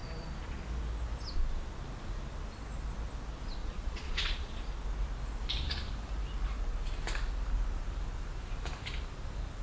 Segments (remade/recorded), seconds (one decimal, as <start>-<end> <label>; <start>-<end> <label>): 0.0-3.6 recorded; 3.6-4.6 remade; 4.6-9.6 recorded